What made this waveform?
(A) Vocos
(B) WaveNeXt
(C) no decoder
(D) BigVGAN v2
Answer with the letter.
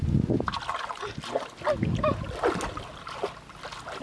C